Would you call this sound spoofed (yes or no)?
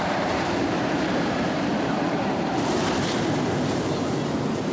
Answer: yes